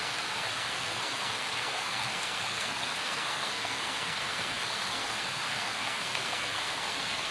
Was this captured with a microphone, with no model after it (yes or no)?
no